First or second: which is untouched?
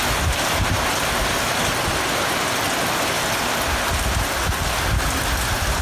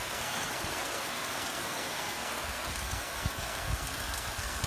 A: first